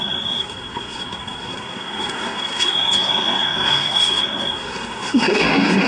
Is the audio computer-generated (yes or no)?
yes